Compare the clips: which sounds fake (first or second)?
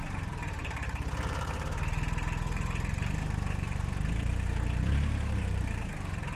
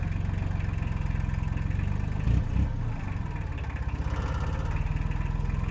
first